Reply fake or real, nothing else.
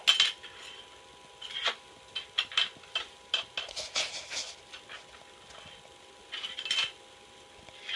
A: real